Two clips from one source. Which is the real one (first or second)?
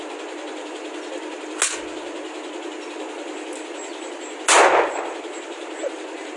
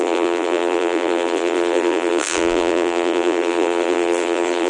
first